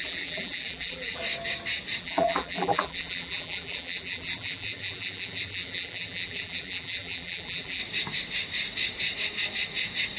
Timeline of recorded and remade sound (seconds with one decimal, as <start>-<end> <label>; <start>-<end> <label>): 0.0-1.2 remade; 1.2-2.0 recorded; 2.0-7.8 remade; 7.8-10.2 recorded